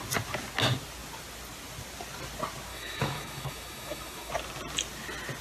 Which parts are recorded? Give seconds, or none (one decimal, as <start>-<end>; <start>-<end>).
0.0-2.7; 4.3-5.4